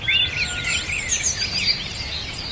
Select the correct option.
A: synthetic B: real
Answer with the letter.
B